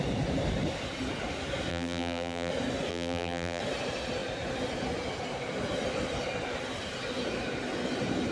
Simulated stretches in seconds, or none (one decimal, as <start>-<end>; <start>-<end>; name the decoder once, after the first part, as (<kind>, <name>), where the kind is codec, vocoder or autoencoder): 1.7-2.5 (vocoder, BigVGAN v2); 2.9-3.6